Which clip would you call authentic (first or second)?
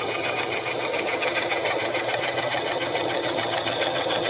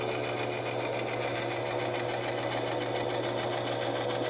second